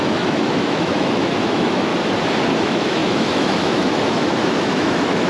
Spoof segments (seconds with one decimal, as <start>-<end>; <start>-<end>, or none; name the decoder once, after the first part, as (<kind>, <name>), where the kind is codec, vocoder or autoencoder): 0.0-1.9 (autoencoder, DAC-VAE); 2.6-5.3